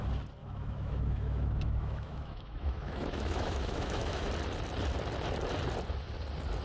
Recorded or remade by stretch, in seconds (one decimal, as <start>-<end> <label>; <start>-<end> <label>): 0.0-0.4 recorded; 0.4-4.3 remade; 4.3-6.6 recorded